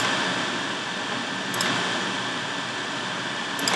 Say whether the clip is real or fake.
real